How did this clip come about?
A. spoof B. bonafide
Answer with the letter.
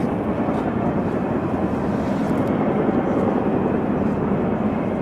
B